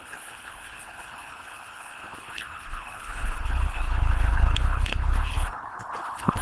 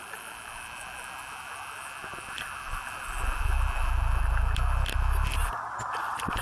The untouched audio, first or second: second